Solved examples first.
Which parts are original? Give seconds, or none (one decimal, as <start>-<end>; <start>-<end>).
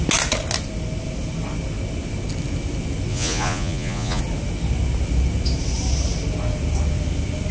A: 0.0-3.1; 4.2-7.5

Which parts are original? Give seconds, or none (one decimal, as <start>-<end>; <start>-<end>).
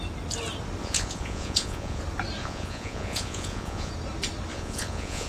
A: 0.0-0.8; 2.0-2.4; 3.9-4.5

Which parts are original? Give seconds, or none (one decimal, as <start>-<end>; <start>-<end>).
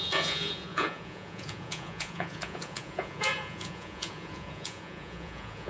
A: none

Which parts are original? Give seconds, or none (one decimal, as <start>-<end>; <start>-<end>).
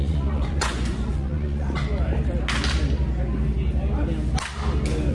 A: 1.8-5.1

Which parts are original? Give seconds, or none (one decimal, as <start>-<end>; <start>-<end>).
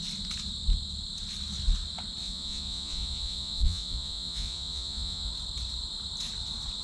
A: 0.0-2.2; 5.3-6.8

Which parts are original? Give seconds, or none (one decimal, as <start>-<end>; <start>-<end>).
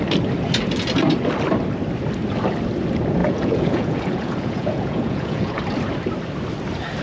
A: 0.0-3.2; 5.6-7.0